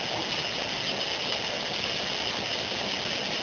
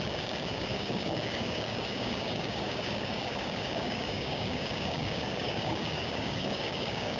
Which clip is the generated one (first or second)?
second